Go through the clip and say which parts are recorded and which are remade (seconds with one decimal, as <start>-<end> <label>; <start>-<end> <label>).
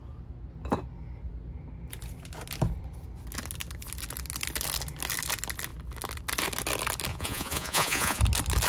0.0-7.1 recorded; 7.1-8.2 remade; 8.2-8.7 recorded